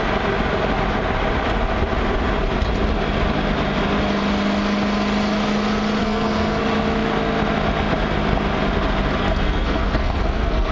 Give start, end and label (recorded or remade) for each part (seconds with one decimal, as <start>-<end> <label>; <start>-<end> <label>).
0.0-6.0 recorded; 6.0-6.6 remade; 6.6-9.2 recorded; 9.2-10.7 remade